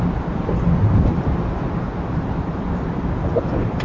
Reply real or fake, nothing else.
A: real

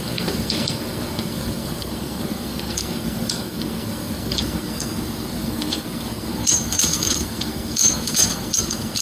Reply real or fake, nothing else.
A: fake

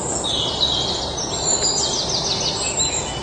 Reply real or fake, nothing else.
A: real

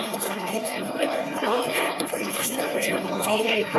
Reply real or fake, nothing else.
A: fake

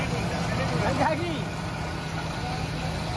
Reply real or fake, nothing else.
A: real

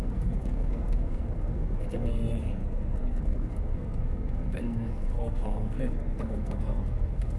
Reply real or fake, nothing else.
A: fake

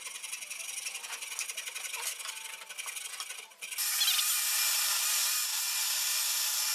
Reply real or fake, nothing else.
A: real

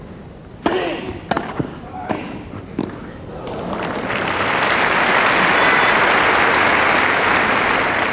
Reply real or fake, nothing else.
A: real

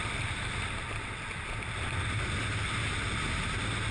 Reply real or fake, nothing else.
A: real